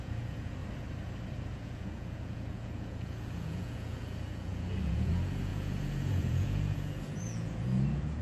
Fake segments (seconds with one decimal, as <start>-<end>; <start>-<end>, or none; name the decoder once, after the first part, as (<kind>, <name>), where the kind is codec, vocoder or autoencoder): 0.0-0.6 (vocoder, Vocos); 1.5-8.2